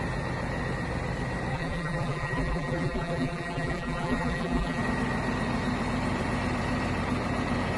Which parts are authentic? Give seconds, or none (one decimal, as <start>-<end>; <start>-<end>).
0.0-1.5; 4.8-7.8